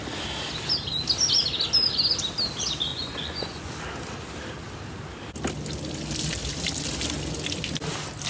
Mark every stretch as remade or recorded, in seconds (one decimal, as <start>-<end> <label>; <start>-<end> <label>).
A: 0.0-2.9 recorded; 2.9-3.7 remade; 3.7-8.3 recorded